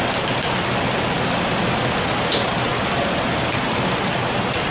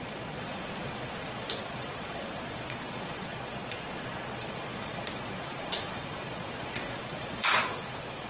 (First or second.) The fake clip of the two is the second